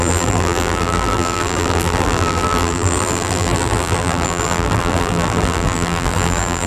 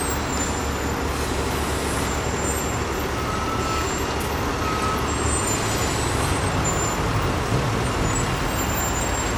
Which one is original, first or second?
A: second